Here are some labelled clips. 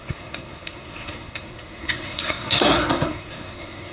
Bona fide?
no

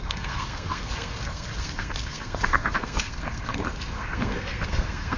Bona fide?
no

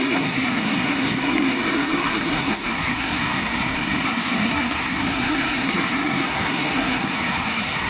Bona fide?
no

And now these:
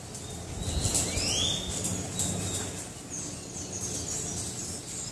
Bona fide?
yes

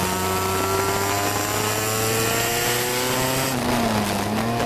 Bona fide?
yes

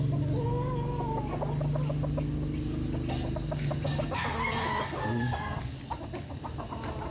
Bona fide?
yes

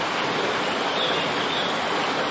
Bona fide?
yes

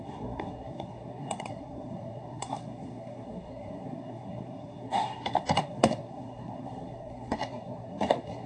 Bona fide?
no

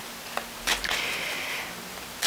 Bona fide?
yes